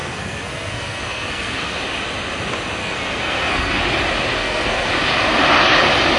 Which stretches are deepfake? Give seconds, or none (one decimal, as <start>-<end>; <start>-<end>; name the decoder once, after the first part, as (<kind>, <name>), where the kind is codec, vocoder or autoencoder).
0.0-1.8 (codec, SNAC); 2.8-3.8; 4.4-4.9